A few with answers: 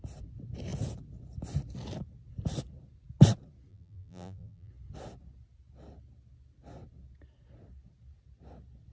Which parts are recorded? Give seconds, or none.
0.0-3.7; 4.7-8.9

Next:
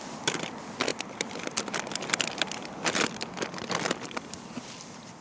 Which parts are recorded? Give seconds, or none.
none

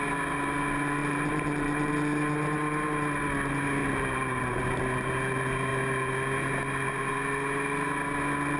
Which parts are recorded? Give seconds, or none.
0.0-1.0; 1.9-3.8; 4.6-8.6

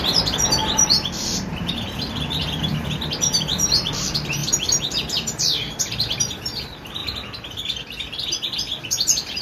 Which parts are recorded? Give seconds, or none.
0.6-1.2; 7.0-8.3